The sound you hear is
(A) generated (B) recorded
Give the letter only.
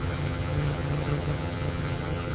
A